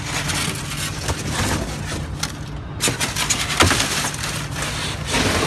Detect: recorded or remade recorded